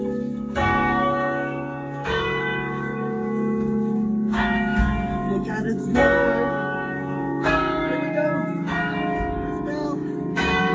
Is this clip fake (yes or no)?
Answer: yes